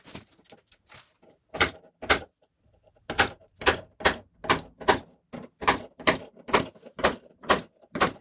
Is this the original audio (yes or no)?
yes